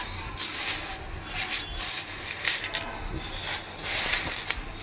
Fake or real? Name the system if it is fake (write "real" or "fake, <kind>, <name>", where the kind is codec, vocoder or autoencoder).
real